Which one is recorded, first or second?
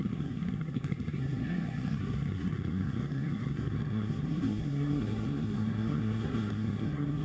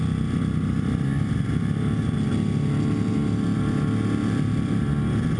second